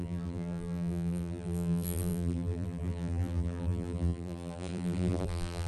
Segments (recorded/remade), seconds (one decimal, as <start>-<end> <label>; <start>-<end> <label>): 0.0-5.7 remade